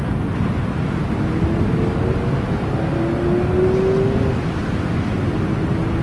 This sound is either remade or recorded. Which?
recorded